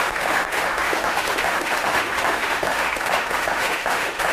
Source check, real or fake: fake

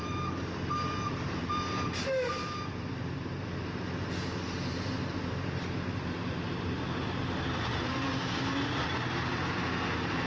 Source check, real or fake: fake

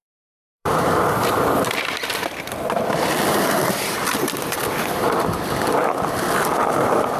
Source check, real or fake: fake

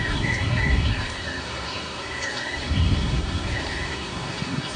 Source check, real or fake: fake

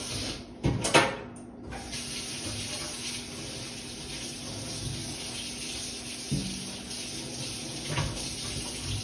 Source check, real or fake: real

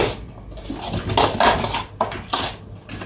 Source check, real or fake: real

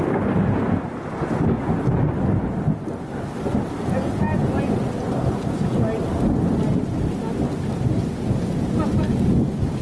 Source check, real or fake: real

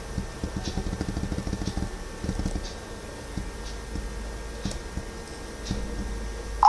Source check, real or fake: real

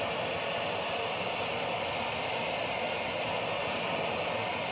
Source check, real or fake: real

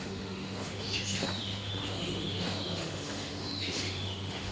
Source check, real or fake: fake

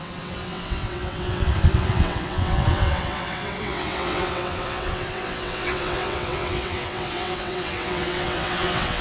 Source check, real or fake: fake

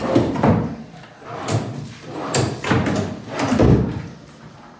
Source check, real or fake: fake